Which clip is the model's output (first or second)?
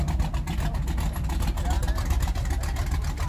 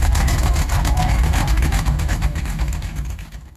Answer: second